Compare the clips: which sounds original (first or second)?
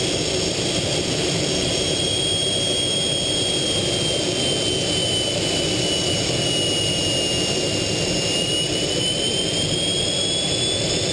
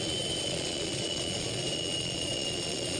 first